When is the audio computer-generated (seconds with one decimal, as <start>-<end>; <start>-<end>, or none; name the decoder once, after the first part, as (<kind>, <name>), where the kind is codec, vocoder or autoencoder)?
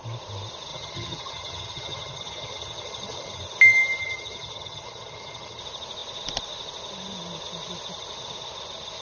0.7-3.4 (vocoder, HiFi-GAN); 4.0-5.6